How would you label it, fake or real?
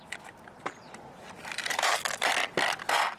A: real